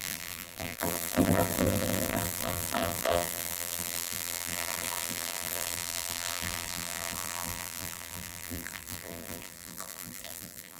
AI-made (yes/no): yes